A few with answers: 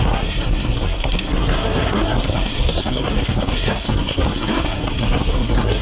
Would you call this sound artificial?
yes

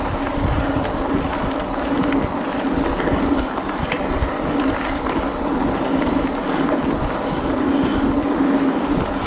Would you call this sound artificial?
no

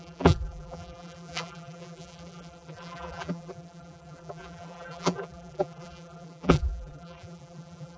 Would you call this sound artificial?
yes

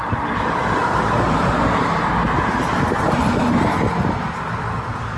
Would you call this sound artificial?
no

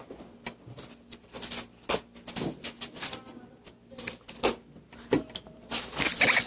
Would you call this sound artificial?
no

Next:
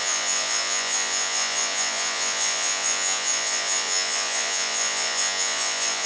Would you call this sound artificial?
yes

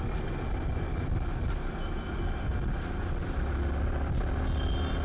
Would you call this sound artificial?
no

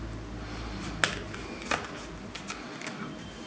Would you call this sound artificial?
no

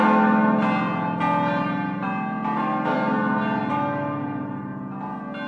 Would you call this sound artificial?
no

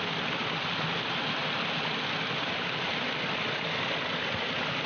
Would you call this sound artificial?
no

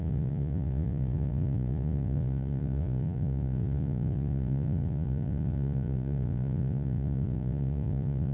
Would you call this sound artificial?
yes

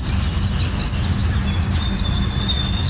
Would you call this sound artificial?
no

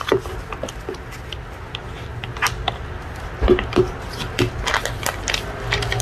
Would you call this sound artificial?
no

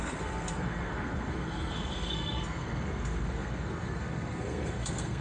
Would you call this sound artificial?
yes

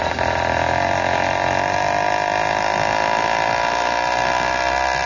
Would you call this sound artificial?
no